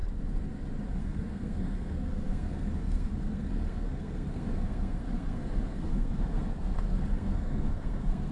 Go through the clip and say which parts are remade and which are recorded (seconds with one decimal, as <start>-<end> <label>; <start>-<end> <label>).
0.0-0.9 recorded; 0.9-8.3 remade